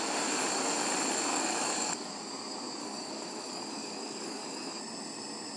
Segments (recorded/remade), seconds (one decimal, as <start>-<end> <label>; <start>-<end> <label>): 0.0-1.3 recorded; 1.3-2.1 remade; 2.1-2.8 recorded; 2.8-4.7 remade; 4.7-5.6 recorded